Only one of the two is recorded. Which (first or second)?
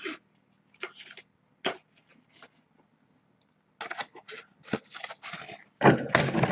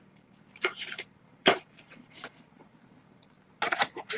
first